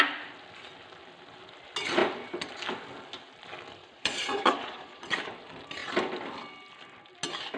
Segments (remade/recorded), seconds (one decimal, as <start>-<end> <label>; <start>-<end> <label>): 0.0-3.8 recorded; 3.8-5.2 remade; 5.2-7.6 recorded